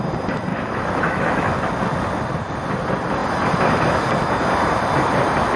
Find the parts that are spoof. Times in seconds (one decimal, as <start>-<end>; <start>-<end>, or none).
0.5-1.5